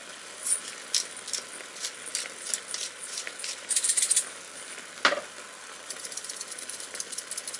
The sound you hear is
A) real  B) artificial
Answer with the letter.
A